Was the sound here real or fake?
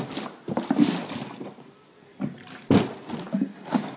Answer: real